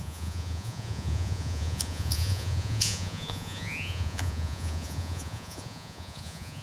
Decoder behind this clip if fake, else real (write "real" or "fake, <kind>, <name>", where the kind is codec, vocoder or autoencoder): fake, vocoder, Vocos